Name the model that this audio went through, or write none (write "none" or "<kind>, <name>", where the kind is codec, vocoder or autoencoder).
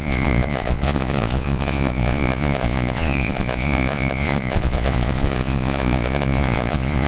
vocoder, Vocos